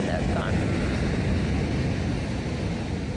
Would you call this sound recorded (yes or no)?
yes